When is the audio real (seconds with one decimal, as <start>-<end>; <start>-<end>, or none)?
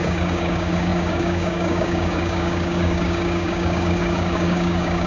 none